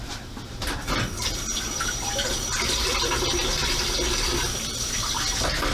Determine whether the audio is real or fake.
real